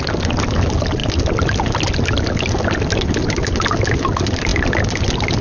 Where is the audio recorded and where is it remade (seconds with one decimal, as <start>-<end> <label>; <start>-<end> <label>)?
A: 0.0-5.4 recorded